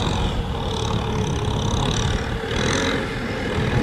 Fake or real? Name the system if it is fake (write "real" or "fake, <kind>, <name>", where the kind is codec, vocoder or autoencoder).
real